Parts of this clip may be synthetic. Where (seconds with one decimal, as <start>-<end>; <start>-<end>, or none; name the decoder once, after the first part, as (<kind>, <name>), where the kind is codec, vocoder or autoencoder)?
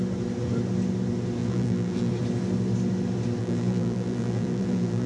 1.4-2.1 (vocoder, BigVGAN v2); 3.4-5.1